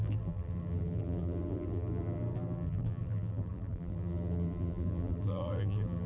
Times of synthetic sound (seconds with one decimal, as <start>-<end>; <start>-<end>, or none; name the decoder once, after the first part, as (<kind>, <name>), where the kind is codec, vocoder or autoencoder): 0.0-6.1 (vocoder, BigVGAN v2)